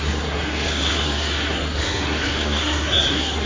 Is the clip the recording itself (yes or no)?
no